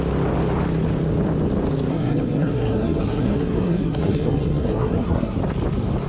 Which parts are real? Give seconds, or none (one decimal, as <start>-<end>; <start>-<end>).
0.0-1.9; 5.4-6.1